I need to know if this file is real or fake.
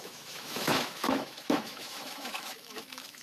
fake